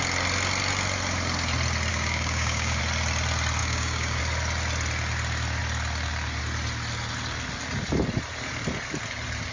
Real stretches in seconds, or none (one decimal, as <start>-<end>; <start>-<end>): 0.0-1.9; 2.8-3.6; 4.2-9.5